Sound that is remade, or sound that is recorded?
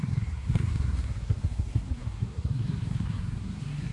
remade